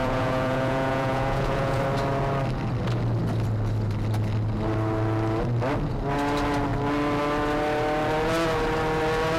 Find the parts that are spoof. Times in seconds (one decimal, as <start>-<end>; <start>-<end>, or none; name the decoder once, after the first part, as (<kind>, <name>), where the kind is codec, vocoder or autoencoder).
0.0-1.8 (vocoder, Vocos)